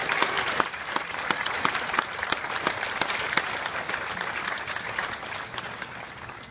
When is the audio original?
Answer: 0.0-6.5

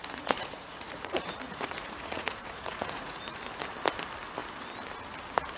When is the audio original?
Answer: 3.4-5.6

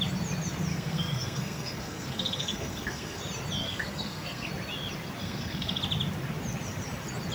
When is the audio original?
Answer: 0.0-0.7; 3.2-3.6; 4.5-5.2; 5.8-7.3

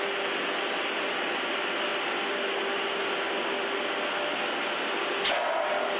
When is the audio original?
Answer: 0.0-6.0